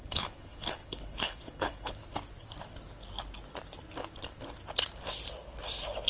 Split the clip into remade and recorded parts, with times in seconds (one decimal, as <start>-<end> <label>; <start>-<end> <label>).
0.0-2.0 remade; 2.0-6.1 recorded